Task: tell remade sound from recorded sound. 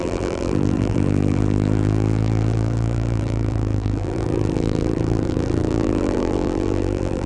remade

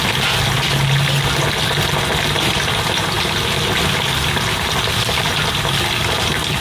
recorded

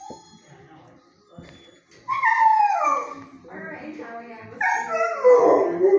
recorded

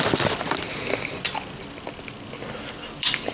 recorded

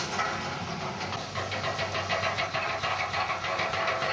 recorded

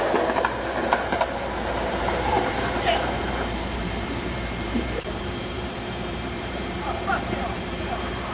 remade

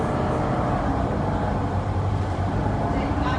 remade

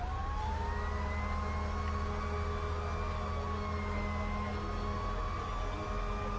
recorded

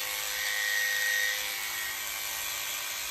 recorded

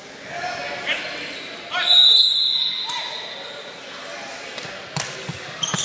recorded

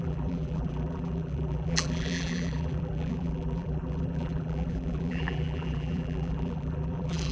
remade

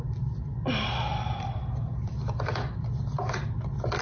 remade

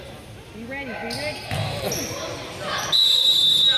recorded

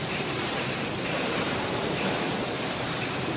remade